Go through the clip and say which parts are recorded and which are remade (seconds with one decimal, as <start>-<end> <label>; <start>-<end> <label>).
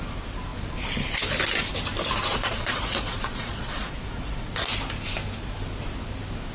0.0-2.3 recorded; 2.3-4.5 remade; 4.5-6.5 recorded